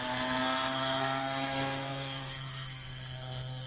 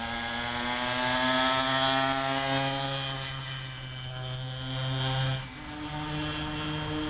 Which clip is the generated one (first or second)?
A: first